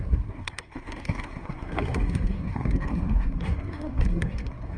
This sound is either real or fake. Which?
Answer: fake